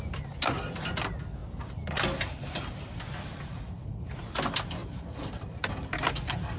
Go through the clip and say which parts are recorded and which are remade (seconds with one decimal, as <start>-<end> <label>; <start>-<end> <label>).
0.0-4.8 recorded; 4.8-5.7 remade; 5.7-6.6 recorded